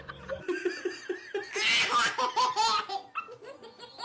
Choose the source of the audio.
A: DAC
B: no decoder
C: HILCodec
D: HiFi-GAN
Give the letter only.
B